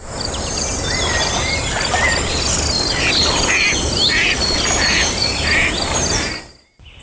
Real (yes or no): yes